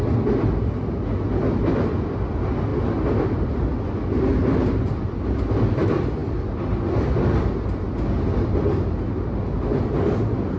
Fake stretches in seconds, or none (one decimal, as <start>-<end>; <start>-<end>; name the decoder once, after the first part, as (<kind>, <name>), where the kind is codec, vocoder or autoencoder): none

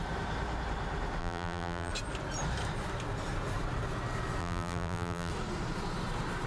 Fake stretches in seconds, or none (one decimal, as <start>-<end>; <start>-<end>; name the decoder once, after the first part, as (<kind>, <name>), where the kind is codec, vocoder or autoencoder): 1.2-1.9 (vocoder, BigVGAN v2); 4.4-5.3

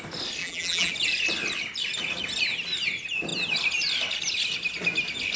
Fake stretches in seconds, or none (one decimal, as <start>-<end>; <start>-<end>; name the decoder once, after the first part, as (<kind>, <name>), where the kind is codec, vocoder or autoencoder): 0.4-0.9 (vocoder, BigVGAN v2)